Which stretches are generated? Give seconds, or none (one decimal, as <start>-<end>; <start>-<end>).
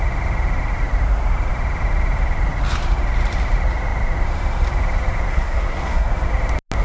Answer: 5.3-6.1